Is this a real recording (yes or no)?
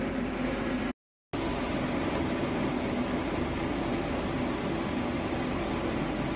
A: yes